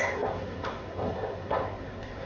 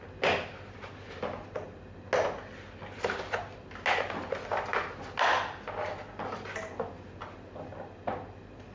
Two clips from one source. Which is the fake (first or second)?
first